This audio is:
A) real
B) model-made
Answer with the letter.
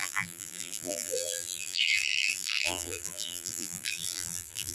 B